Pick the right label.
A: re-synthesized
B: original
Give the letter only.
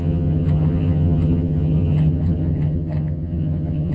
A